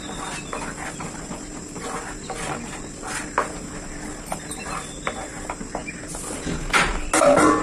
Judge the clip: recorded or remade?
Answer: recorded